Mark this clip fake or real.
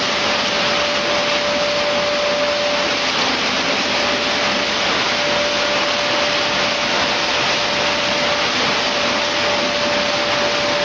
real